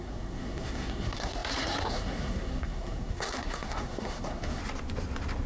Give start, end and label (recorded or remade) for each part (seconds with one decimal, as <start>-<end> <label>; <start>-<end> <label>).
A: 0.0-4.6 remade; 4.6-5.5 recorded